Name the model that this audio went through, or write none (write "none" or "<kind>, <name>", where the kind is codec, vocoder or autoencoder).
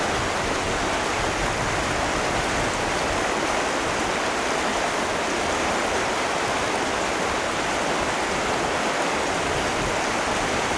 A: none